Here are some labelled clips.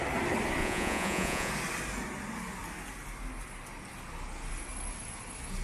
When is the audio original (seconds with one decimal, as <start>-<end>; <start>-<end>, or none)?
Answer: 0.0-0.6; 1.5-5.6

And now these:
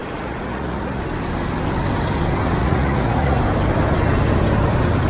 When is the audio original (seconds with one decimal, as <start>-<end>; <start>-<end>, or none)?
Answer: 1.0-2.6; 3.4-5.1

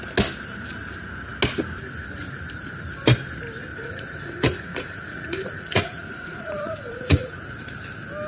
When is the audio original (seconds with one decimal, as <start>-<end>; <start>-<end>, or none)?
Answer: 0.0-3.7; 7.5-8.3